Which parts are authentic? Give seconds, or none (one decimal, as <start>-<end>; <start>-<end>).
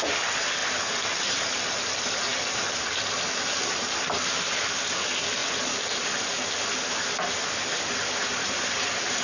0.0-2.3; 3.4-5.4; 6.0-9.2